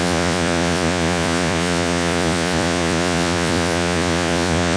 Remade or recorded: remade